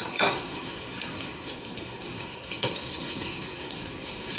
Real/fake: fake